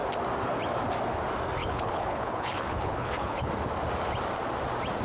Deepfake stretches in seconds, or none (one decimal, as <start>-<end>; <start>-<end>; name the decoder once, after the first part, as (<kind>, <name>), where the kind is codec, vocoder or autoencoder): 1.6-3.5 (codec, HILCodec)